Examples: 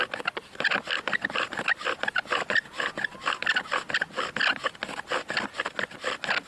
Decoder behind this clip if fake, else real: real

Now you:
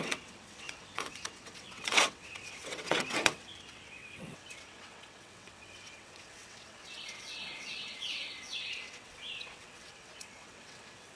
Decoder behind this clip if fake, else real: fake, vocoder, WaveNeXt